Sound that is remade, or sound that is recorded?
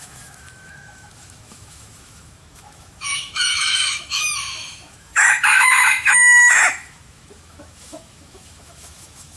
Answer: remade